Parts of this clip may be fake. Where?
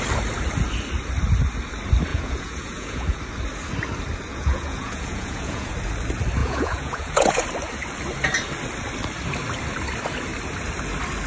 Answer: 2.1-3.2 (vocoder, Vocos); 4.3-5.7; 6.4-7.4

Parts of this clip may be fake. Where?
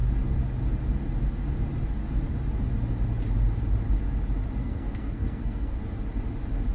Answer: 4.6-5.8 (codec, SNAC)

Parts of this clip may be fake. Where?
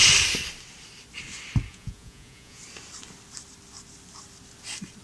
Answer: 1.7-2.6 (vocoder, Vocos)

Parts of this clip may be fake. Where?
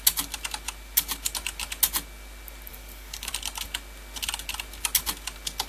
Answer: 2.7-3.3 (codec, DAC)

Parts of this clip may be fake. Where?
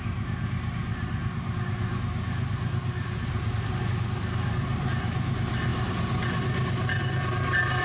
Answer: 0.0-7.8 (vocoder, BigVGAN v2)